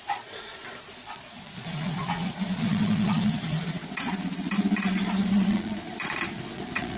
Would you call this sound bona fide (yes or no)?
no